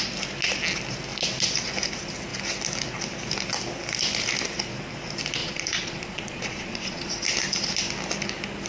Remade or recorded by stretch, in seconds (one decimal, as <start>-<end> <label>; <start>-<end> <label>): 0.0-5.4 recorded; 5.4-7.1 remade; 7.1-8.7 recorded